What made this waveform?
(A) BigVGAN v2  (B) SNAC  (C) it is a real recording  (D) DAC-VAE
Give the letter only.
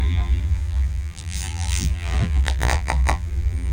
A